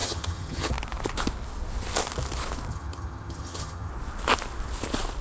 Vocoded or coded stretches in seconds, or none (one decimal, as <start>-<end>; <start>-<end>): 0.0-0.7; 2.7-3.9